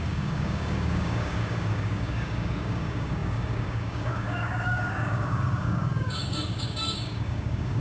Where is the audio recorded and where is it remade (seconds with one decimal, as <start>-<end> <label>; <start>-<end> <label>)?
0.0-7.8 remade